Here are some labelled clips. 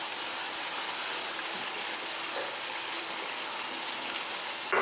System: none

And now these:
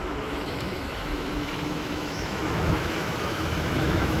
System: autoencoder, DAC-VAE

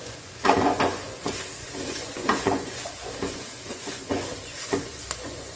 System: vocoder, Vocos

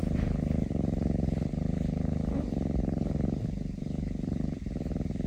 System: none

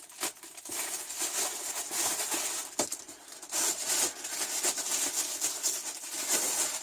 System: none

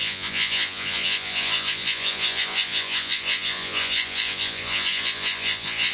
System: vocoder, Vocos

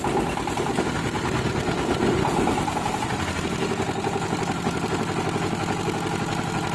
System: none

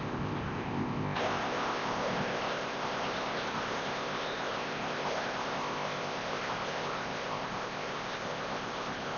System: codec, ZipCodec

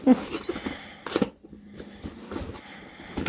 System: none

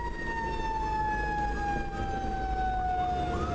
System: none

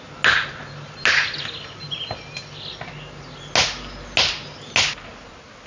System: none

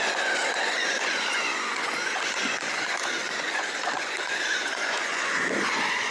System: vocoder, Vocos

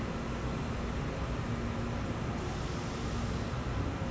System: none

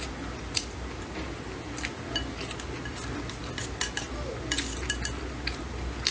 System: none